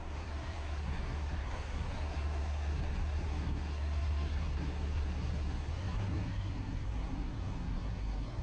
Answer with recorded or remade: remade